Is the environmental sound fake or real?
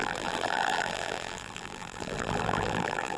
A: fake